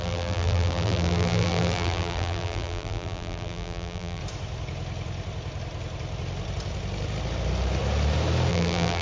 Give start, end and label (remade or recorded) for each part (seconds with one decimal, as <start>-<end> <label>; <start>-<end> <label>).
0.0-4.2 remade; 4.2-8.5 recorded; 8.5-9.0 remade